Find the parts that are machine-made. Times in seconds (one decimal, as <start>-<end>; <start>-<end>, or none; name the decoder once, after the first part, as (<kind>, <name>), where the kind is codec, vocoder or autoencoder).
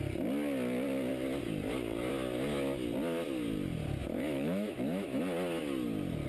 4.0-5.2 (autoencoder, DAC-VAE)